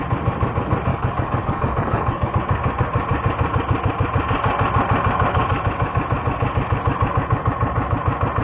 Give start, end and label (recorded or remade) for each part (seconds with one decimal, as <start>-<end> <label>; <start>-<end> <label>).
0.0-0.9 recorded; 0.9-2.3 remade; 2.3-8.4 recorded